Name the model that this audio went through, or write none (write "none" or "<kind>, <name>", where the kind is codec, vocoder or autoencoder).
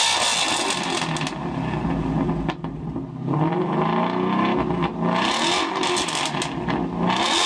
none